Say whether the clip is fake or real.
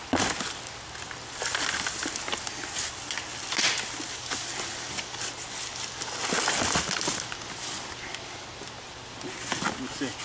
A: real